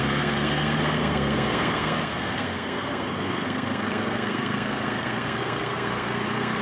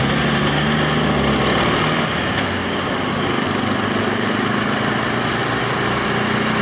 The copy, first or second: first